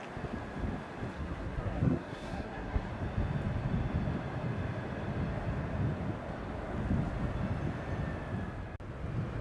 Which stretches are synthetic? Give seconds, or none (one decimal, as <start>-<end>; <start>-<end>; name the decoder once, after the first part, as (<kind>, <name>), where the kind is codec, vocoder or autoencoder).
1.1-2.9 (codec, SNAC)